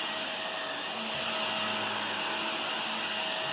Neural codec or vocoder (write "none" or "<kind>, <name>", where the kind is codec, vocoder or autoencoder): none